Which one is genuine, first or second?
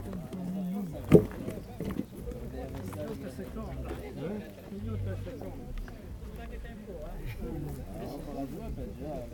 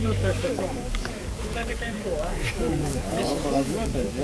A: first